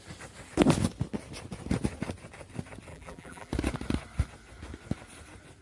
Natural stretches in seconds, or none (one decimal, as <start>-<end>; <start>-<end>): 0.0-2.9; 3.5-5.6